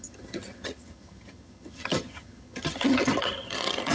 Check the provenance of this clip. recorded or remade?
remade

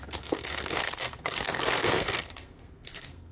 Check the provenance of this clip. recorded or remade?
remade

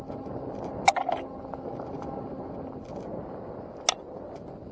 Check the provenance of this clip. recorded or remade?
recorded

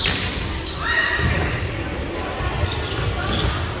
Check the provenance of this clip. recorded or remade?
recorded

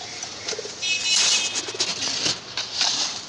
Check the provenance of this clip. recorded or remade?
recorded